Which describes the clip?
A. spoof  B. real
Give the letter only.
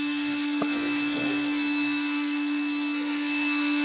A